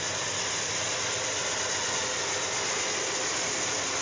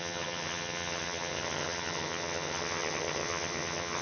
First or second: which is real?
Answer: first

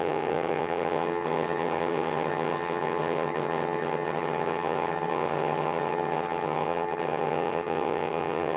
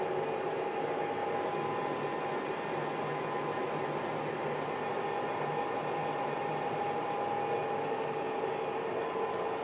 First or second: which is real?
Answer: second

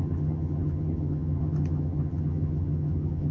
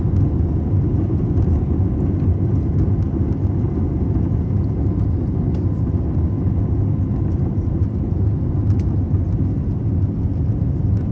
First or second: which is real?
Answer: second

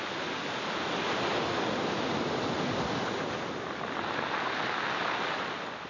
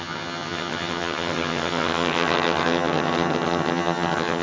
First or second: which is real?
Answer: first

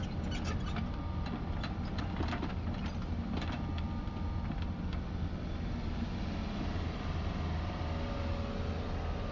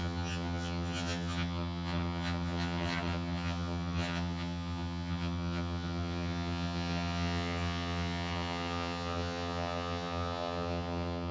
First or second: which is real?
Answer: first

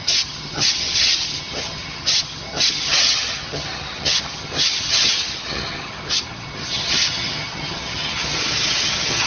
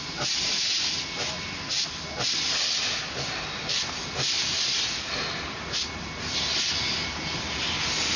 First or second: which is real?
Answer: second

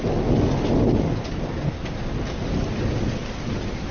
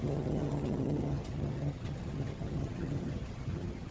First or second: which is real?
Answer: first